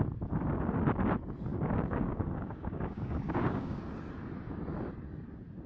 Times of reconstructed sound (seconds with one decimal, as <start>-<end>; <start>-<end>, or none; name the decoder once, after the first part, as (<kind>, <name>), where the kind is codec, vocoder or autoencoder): 1.5-3.8 (codec, DAC)